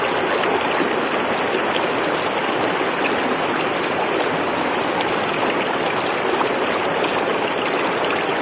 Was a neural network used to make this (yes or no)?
no